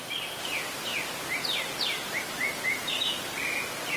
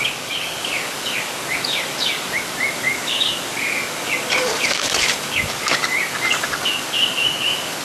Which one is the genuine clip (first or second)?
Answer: first